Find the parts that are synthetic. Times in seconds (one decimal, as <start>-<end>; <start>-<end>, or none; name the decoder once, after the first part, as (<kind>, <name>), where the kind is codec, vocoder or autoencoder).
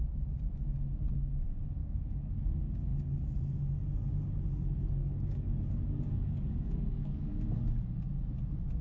1.8-2.4 (codec, DAC); 5.0-7.7